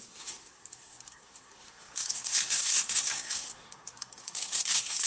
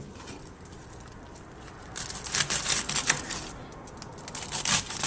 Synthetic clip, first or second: first